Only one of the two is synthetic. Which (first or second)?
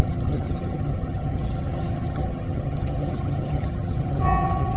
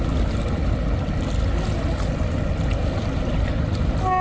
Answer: first